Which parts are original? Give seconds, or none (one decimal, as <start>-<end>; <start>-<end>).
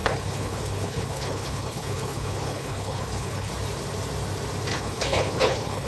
3.5-4.7